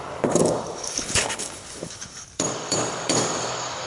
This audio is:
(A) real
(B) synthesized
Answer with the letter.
B